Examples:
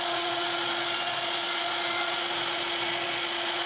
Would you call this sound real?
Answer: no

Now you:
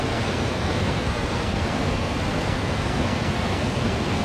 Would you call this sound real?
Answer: no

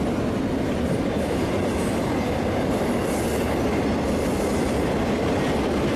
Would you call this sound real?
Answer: yes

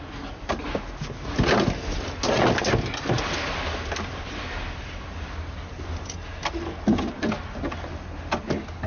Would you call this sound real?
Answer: yes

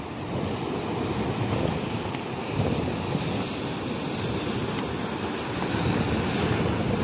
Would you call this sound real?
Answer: yes